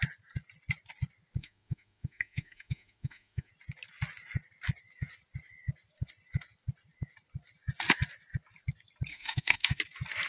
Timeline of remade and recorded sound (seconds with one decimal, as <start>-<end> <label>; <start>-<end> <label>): 0.0-1.4 recorded; 1.4-3.5 remade; 3.5-9.1 recorded; 9.1-9.8 remade; 9.8-10.3 recorded